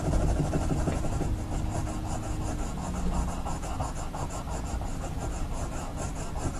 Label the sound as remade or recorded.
recorded